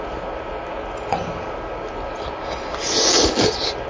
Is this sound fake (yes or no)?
no